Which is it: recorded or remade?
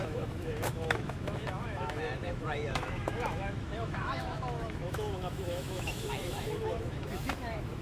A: remade